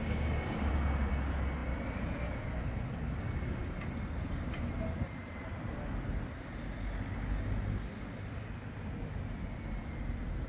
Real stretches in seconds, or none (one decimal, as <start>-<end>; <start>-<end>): 0.7-10.5